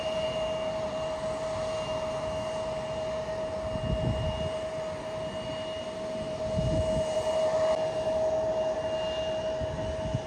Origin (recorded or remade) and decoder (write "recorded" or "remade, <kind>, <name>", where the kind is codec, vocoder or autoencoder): recorded